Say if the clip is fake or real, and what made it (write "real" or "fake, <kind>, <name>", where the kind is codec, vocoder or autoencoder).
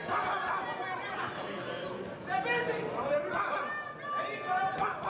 real